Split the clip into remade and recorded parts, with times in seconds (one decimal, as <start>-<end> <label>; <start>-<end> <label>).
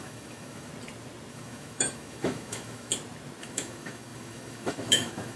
0.0-0.7 remade; 0.7-1.3 recorded; 1.3-2.9 remade; 2.9-3.4 recorded; 3.4-5.4 remade